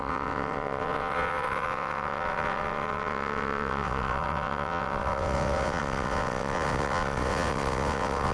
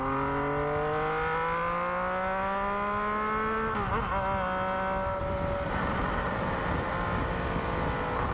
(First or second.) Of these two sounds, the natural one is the second